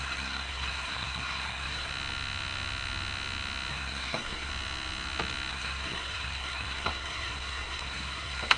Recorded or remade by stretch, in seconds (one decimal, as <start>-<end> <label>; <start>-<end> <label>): 0.0-1.9 remade; 1.9-3.7 recorded; 3.7-4.5 remade; 4.5-5.5 recorded; 5.5-8.6 remade